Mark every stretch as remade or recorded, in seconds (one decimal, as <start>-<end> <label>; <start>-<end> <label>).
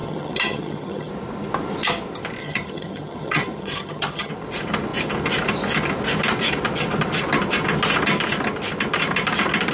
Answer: 0.0-1.1 remade; 1.1-2.4 recorded; 2.4-4.3 remade; 4.3-9.7 recorded